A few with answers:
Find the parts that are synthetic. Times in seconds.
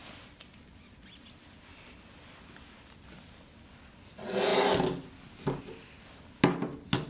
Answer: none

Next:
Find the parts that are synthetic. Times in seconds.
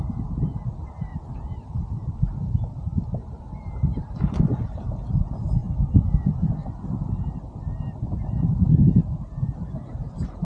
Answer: 0.0-1.1 (vocoder, BigVGAN v2); 1.8-2.9; 3.4-5.6; 8.3-10.4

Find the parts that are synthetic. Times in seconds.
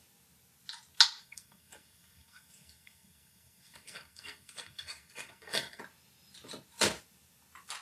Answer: 1.2-5.8 (codec, SNAC)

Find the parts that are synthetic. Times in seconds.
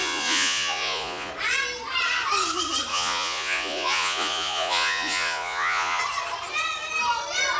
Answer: 0.0-1.3 (vocoder, Vocos); 2.9-6.0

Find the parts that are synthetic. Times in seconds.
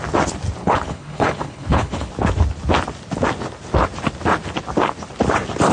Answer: 0.6-2.1 (codec, HILCodec)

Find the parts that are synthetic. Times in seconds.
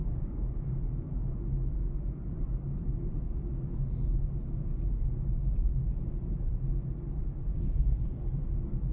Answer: 0.0-0.8 (codec, DAC)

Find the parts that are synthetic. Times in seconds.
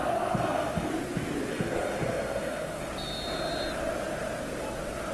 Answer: 0.0-0.9 (codec, SNAC); 1.5-2.9